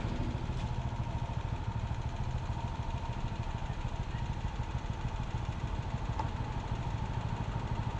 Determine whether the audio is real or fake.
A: real